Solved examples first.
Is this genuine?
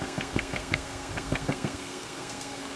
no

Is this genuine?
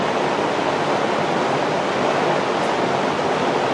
yes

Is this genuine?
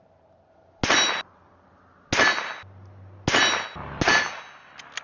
yes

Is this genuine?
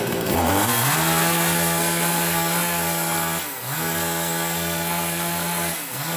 no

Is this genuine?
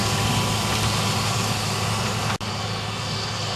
yes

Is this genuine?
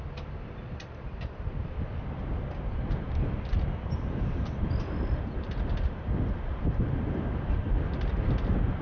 yes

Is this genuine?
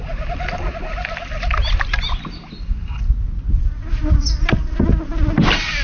yes